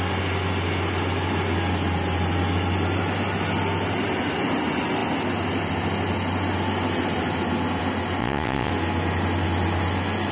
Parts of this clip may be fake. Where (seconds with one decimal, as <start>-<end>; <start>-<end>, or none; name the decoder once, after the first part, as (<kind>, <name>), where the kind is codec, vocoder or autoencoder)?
8.2-8.7 (vocoder, WaveNeXt)